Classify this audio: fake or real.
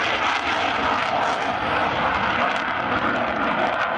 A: real